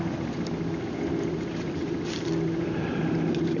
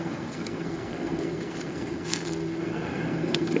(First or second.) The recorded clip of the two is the first